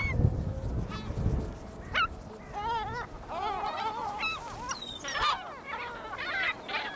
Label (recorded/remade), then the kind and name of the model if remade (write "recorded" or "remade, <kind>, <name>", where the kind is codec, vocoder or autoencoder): recorded